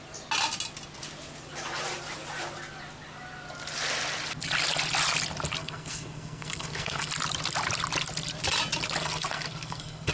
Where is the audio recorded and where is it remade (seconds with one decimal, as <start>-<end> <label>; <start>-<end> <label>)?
0.0-5.6 recorded; 5.6-7.1 remade; 7.1-9.0 recorded; 9.0-10.1 remade